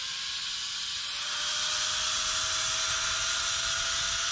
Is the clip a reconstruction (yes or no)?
no